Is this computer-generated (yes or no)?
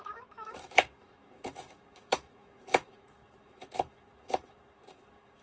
yes